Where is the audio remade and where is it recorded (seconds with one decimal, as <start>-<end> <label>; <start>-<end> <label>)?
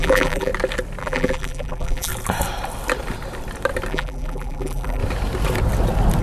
0.0-0.5 remade; 0.5-1.0 recorded; 1.0-2.1 remade; 2.1-3.9 recorded; 3.9-5.0 remade; 5.0-6.2 recorded